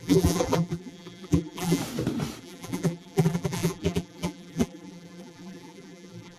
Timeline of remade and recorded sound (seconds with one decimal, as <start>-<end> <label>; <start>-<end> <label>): 0.0-1.8 remade; 1.8-2.4 recorded; 2.4-6.4 remade

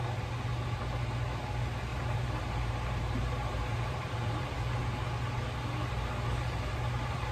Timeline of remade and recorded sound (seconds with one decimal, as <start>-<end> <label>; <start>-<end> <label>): 0.0-1.9 recorded; 1.9-4.5 remade; 4.5-7.3 recorded

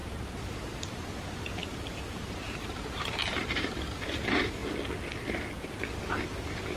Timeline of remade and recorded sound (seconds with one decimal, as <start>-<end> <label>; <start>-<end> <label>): 0.0-4.6 remade; 4.6-6.2 recorded; 6.2-6.8 remade

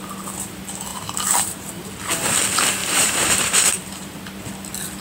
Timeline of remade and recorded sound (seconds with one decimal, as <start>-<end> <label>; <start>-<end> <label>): 0.0-0.9 recorded; 0.9-1.7 remade; 1.7-2.8 recorded; 2.8-4.2 remade; 4.2-5.0 recorded

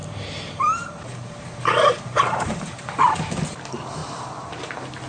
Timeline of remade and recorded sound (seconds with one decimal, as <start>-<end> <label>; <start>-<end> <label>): 0.0-3.1 remade; 3.1-4.0 recorded; 4.0-4.6 remade; 4.6-5.1 recorded

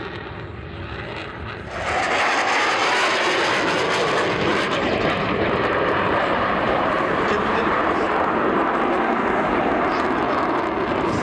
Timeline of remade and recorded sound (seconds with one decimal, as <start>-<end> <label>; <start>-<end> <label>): 0.0-4.5 recorded; 4.5-8.1 remade; 8.1-11.2 recorded

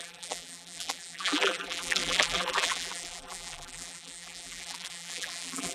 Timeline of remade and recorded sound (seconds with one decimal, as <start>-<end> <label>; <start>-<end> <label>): 0.0-5.7 remade

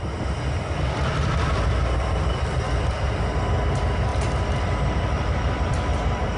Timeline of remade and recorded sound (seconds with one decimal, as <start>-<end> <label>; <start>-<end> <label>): 0.0-6.4 remade